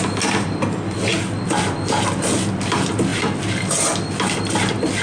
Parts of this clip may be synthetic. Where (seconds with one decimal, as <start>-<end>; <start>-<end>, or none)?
none